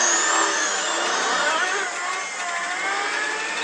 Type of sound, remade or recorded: recorded